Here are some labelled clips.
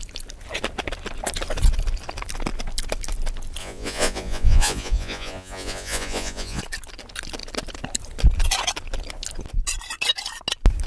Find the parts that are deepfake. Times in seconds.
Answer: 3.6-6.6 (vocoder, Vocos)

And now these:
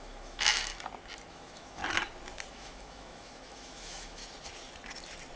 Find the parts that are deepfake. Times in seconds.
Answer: 0.0-0.7 (autoencoder, DAC-VAE); 1.3-1.8; 2.5-4.2

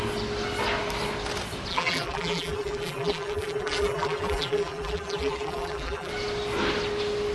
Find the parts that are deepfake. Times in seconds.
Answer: 1.7-6.1 (vocoder, BigVGAN v2)

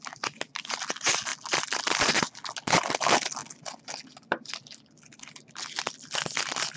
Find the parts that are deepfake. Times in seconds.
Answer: none